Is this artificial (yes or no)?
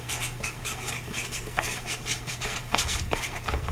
yes